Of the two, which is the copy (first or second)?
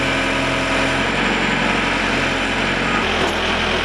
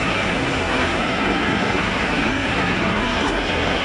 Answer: second